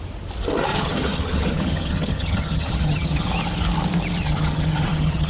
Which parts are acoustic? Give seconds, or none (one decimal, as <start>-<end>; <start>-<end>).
0.0-0.7; 3.3-4.2